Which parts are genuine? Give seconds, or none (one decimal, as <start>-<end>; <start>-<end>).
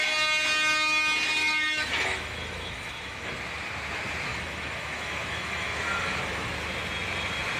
0.0-1.4; 3.3-4.3; 6.5-7.6